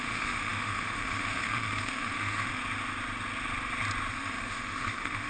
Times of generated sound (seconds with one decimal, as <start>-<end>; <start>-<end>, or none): 0.0-2.6; 4.1-5.3